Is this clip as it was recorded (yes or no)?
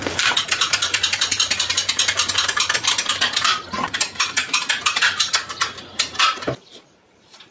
no